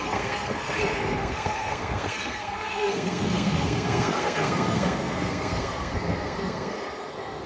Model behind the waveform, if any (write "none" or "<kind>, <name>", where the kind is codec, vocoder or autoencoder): codec, SNAC